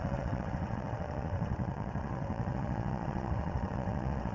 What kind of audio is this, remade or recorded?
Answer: remade